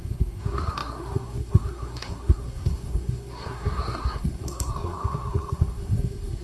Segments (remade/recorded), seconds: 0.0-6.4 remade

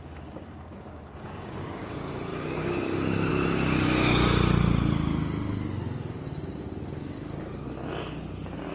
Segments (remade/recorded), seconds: 0.0-4.3 remade; 4.3-8.7 recorded

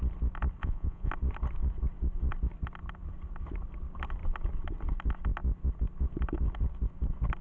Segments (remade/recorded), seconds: 0.0-0.6 recorded; 0.6-1.1 remade; 1.1-7.4 recorded